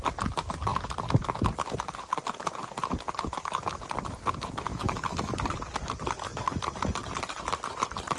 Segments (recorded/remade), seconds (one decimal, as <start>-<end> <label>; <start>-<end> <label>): 0.0-4.7 recorded; 4.7-5.3 remade; 5.3-8.2 recorded